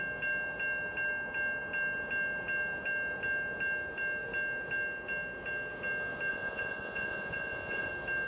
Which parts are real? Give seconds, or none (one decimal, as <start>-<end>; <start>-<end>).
0.0-6.3; 7.9-8.3

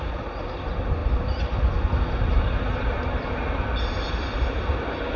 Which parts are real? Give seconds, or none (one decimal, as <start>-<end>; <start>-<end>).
0.0-5.2